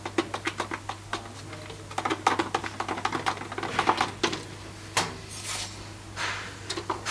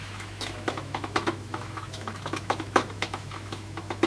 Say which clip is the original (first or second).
first